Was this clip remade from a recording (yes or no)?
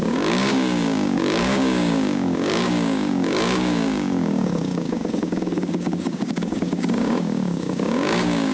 yes